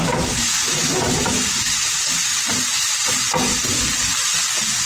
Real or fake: real